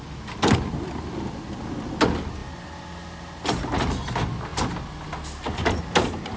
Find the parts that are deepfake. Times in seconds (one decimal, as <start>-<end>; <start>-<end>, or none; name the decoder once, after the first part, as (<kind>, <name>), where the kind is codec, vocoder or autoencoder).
none